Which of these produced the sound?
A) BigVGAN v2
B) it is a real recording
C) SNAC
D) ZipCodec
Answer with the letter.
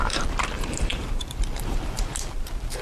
A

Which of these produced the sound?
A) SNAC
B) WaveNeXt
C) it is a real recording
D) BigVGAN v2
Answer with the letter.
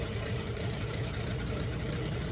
D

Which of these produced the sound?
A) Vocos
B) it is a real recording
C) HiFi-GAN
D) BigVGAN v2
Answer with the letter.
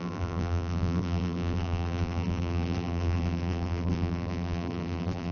D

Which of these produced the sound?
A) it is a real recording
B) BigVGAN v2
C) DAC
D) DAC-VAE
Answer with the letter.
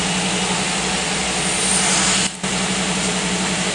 A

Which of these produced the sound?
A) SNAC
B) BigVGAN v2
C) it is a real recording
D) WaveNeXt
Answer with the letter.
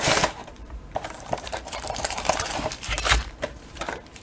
B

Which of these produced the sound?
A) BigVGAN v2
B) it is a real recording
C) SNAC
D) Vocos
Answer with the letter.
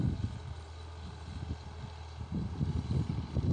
B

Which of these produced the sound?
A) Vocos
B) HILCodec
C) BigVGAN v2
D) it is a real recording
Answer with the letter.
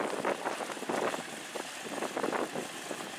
D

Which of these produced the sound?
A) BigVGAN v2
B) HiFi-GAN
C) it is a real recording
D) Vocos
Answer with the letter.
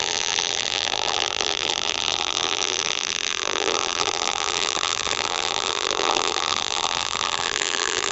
A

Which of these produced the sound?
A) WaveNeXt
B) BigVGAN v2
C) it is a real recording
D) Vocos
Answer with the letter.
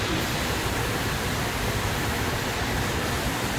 C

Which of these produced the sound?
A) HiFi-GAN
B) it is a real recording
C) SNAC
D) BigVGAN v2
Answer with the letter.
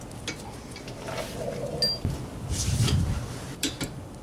B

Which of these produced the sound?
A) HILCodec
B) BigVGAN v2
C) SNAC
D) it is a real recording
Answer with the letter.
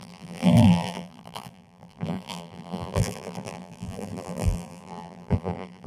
B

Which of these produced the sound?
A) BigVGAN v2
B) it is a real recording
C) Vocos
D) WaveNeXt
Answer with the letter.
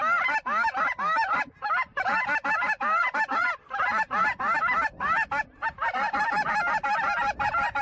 B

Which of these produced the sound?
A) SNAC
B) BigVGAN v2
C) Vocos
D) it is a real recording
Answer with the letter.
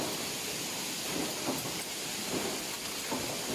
D